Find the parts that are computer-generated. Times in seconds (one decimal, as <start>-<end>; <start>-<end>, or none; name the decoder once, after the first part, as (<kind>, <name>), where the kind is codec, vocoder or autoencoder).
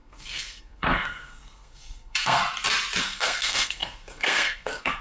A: 0.0-2.4 (codec, SNAC); 3.0-5.0